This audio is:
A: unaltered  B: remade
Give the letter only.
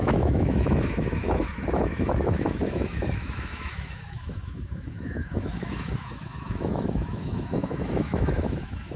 B